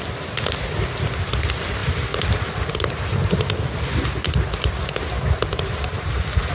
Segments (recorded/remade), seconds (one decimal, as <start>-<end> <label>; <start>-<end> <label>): 0.0-6.5 recorded